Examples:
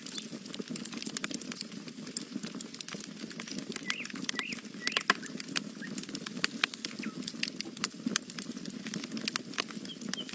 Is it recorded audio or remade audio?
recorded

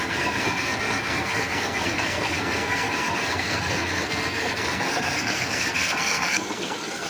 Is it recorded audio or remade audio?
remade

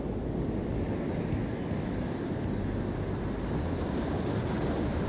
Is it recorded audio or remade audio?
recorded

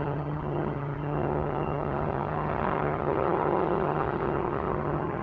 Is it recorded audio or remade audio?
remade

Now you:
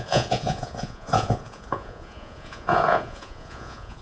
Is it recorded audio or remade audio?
remade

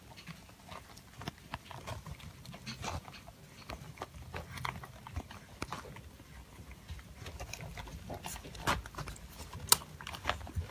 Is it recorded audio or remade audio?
recorded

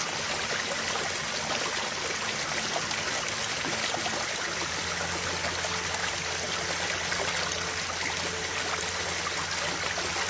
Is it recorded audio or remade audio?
recorded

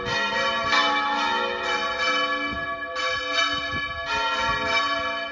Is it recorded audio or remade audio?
recorded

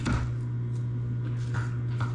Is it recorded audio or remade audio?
recorded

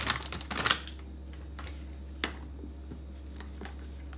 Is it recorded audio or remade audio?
recorded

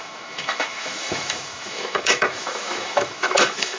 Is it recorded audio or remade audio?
remade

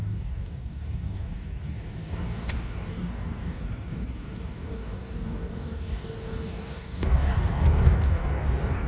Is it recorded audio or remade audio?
remade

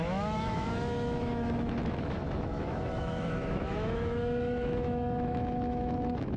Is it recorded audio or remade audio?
remade